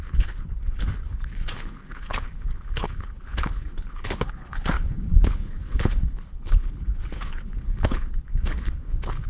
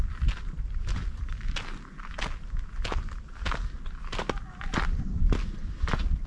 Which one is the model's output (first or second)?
first